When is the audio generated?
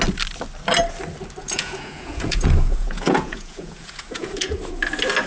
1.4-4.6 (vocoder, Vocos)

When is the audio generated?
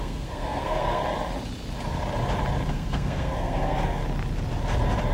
0.0-1.0 (codec, SNAC); 2.7-4.0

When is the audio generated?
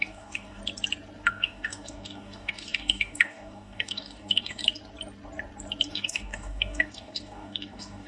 0.0-0.6 (codec, DAC); 1.3-4.6; 5.9-8.1